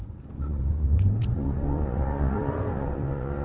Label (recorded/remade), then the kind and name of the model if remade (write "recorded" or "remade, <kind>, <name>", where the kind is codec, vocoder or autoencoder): remade, vocoder, Vocos